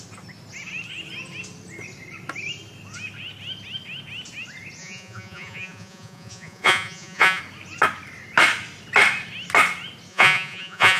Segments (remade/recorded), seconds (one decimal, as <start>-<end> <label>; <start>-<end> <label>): 0.0-4.8 recorded; 4.8-7.4 remade; 7.4-10.1 recorded; 10.1-11.0 remade

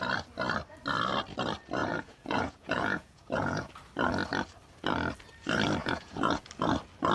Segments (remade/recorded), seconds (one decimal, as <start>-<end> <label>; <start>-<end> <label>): 0.0-1.8 recorded; 1.8-3.7 remade; 3.7-5.8 recorded; 5.8-6.5 remade; 6.5-7.1 recorded

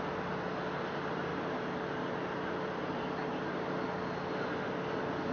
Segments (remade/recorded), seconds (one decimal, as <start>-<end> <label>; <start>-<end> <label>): 0.0-5.3 recorded

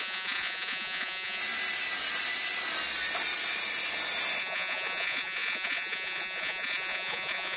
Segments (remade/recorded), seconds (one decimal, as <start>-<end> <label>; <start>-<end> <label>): 0.0-1.4 remade; 1.4-4.4 recorded; 4.4-7.6 remade

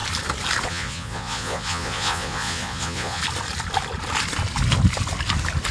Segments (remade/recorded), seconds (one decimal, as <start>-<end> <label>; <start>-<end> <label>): 0.0-0.7 recorded; 0.7-3.2 remade; 3.2-5.7 recorded